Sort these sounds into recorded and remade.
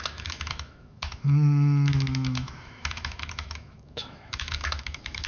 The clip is remade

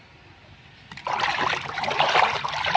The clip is recorded